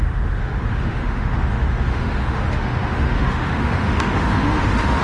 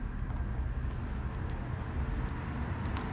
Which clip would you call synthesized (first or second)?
first